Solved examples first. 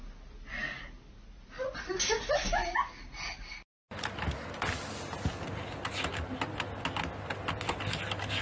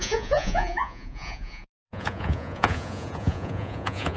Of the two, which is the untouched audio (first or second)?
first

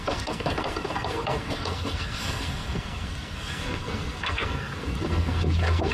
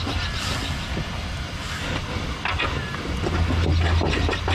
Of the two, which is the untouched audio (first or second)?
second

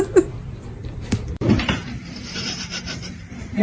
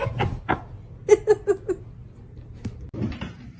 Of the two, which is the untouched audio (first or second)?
second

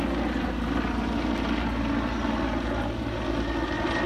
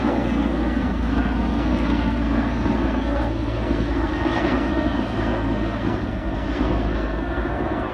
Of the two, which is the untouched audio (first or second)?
first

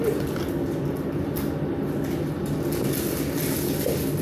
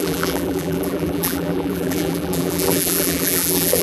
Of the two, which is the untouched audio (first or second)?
first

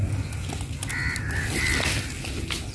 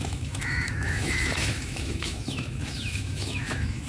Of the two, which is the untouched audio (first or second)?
first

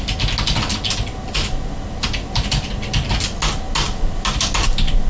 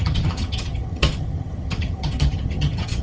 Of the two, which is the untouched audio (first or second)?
first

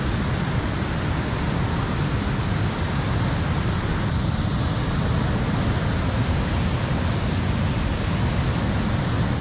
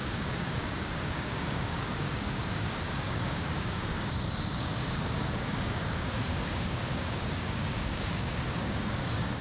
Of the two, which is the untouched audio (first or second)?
first